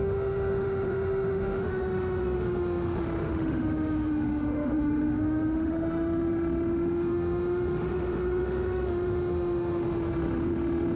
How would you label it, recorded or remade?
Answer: remade